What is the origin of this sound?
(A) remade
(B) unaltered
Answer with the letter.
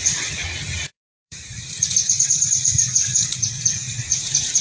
A